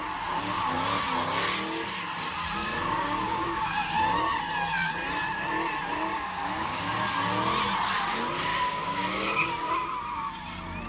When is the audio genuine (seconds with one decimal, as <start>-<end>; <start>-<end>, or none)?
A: 0.0-2.6; 3.7-6.1; 6.8-8.5; 9.7-10.9

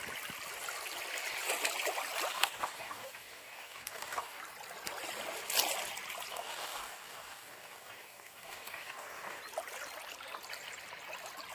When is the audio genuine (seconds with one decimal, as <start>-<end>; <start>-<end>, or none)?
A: 0.0-2.3; 4.4-6.3; 9.4-11.5

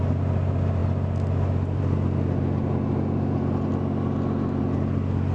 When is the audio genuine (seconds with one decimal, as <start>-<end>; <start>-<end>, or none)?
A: 0.0-5.3

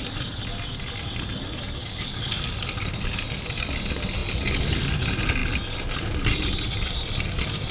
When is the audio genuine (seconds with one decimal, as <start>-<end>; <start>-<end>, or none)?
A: 0.0-1.8; 2.5-7.7

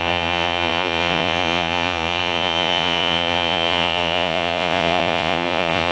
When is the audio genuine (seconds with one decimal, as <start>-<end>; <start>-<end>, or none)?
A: none

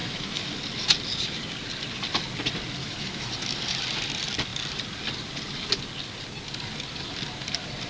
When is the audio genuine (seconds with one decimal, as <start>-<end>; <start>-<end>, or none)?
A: 0.5-2.8; 3.3-7.9